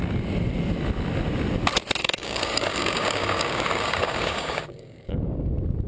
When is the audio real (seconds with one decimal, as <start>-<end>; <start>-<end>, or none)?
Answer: 0.0-2.0; 5.5-5.9